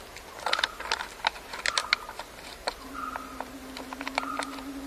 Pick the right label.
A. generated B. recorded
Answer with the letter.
B